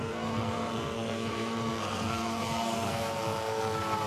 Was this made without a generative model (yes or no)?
no